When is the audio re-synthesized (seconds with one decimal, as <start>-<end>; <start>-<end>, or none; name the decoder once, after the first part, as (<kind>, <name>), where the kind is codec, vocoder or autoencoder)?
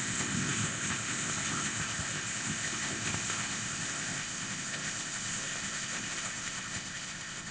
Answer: 0.0-7.5 (codec, ZipCodec)